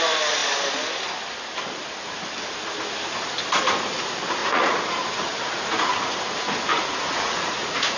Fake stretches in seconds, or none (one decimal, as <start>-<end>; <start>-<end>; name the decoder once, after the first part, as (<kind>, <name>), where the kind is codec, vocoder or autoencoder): 4.4-6.1 (vocoder, Vocos); 6.7-8.0